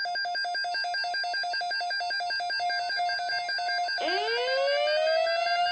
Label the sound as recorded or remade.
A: recorded